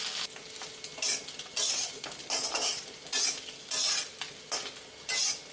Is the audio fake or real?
real